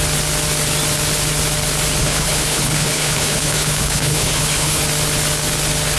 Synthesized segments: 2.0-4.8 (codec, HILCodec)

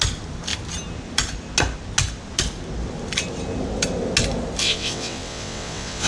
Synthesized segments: 4.6-6.1 (vocoder, WaveNeXt)

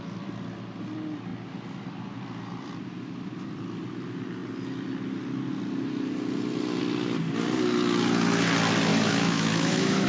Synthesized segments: 8.9-10.1 (autoencoder, DAC-VAE)

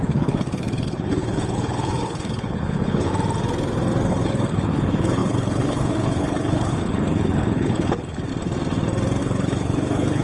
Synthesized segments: 0.0-3.1 (codec, HILCodec); 4.1-8.3; 9.2-10.2